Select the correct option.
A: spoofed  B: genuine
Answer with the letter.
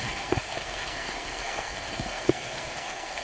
A